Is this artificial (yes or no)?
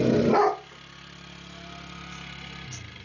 no